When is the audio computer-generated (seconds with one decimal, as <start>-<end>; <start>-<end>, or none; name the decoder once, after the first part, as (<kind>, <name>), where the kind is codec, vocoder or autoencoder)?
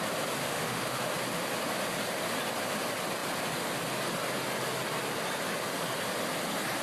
0.4-1.0 (autoencoder, DAC-VAE)